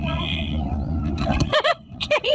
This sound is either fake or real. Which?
fake